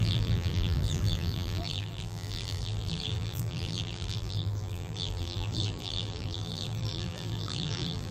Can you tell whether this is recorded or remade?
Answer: remade